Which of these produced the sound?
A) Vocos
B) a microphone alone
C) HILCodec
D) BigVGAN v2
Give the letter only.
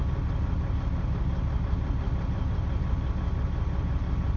B